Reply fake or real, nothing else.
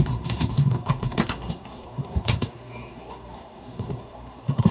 fake